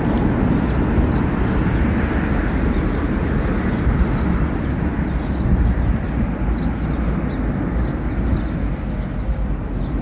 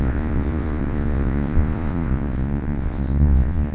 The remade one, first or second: second